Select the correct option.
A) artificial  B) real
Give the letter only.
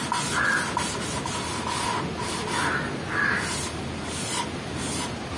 B